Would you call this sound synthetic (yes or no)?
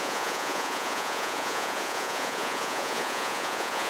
yes